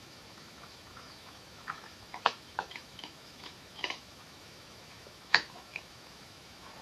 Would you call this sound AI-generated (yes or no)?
yes